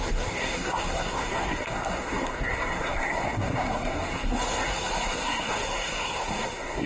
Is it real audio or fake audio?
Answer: fake